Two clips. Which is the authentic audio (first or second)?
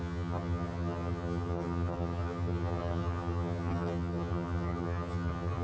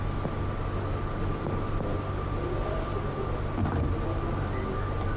second